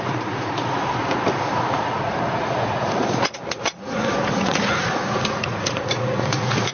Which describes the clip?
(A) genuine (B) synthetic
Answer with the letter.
B